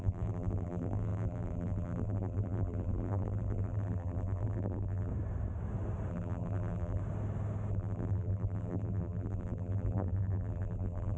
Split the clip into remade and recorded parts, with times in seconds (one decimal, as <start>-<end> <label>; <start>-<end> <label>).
0.0-5.1 remade; 5.1-6.1 recorded; 6.1-7.0 remade; 7.0-7.7 recorded; 7.7-11.2 remade